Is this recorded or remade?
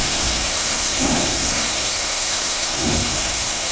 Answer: remade